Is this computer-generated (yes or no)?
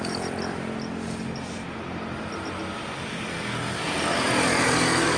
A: no